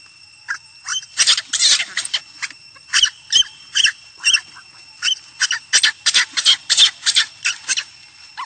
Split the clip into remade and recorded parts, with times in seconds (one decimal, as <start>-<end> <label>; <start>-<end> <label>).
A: 0.0-8.5 recorded